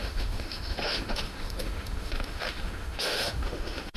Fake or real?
fake